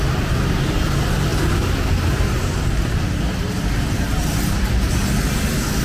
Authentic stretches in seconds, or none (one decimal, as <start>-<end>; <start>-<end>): 0.0-5.8